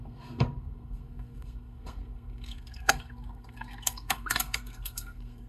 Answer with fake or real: fake